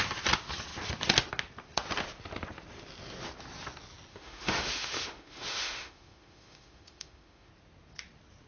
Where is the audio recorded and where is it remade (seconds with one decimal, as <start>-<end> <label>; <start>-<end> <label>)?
0.0-4.1 recorded; 4.1-7.5 remade; 7.5-8.5 recorded